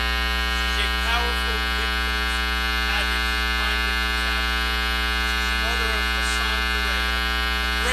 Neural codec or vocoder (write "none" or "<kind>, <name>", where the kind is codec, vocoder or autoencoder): none